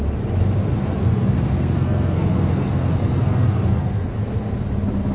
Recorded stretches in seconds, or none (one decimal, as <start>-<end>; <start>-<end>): 0.0-1.0; 4.1-5.1